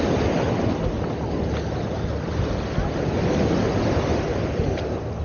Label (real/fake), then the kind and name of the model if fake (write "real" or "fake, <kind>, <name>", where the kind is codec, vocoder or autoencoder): real